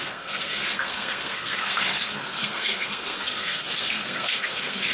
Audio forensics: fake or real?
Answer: fake